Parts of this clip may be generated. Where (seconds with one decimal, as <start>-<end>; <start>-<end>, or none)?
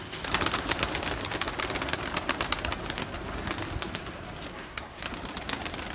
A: 4.5-5.0